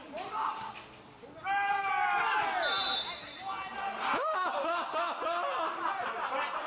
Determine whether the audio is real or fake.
real